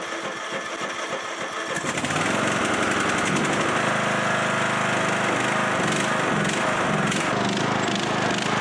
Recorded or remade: recorded